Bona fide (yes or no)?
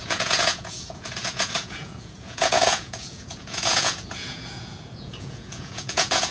no